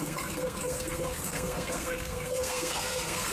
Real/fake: fake